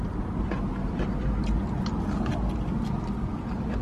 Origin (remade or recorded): recorded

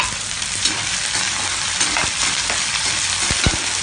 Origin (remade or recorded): remade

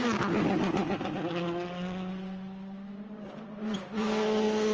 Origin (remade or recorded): recorded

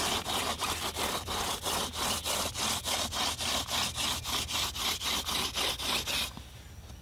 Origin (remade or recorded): recorded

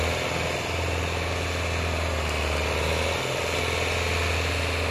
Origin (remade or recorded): recorded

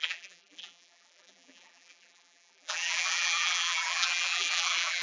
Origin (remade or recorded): remade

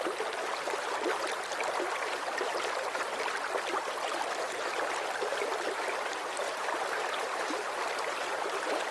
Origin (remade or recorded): recorded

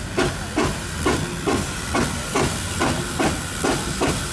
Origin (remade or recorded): recorded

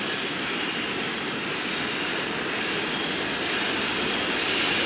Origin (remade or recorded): recorded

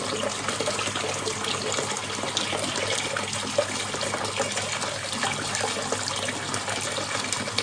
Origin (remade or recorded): recorded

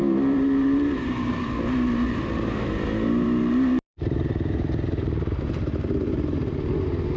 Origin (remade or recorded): remade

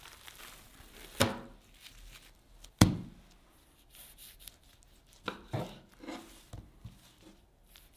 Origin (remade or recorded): recorded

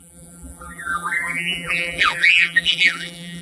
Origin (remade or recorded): remade